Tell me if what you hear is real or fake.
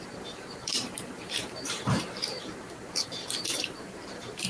fake